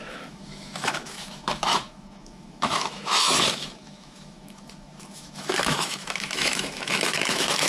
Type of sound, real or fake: fake